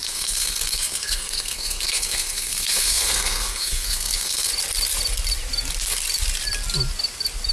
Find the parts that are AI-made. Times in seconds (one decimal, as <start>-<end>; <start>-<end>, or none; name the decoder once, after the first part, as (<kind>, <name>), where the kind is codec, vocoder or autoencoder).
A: 0.0-4.5 (codec, SNAC)